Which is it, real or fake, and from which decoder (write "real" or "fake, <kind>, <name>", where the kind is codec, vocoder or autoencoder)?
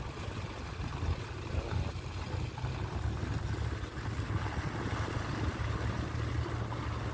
real